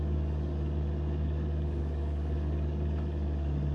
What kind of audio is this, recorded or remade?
remade